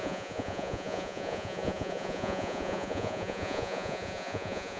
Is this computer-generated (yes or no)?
yes